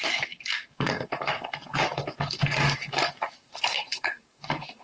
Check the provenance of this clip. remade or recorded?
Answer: remade